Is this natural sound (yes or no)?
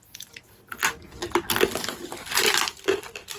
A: yes